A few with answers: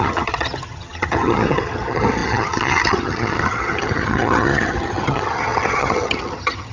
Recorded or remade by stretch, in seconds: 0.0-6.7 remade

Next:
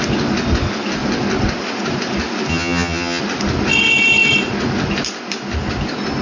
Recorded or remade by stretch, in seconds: 0.0-2.5 recorded; 2.5-3.2 remade; 3.2-6.2 recorded

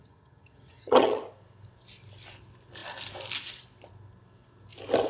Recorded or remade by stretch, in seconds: 0.0-1.2 remade; 1.2-5.1 recorded

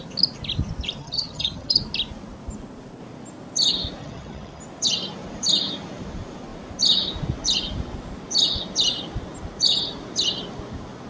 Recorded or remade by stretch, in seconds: 0.0-1.0 recorded; 1.0-1.8 remade; 1.8-4.0 recorded; 4.0-4.6 remade; 4.6-11.1 recorded